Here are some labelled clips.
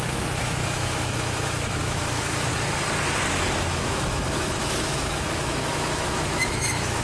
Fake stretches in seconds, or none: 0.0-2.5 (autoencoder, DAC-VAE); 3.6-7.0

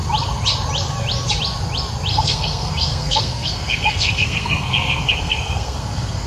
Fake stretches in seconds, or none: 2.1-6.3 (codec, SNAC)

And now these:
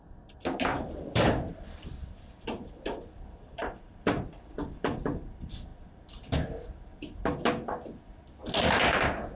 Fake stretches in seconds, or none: 0.7-5.3 (vocoder, BigVGAN v2)

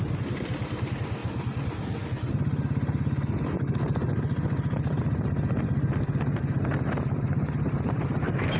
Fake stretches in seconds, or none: 0.0-1.2 (vocoder, BigVGAN v2); 6.4-8.6

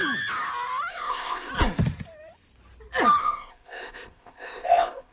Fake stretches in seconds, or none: 0.9-1.5 (codec, ZipCodec); 3.2-5.1

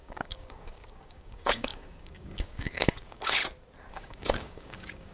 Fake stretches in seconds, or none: 0.0-3.4 (codec, DAC); 3.9-5.1

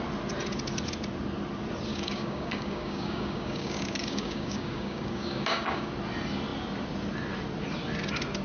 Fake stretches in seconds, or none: 1.9-5.9 (codec, DAC)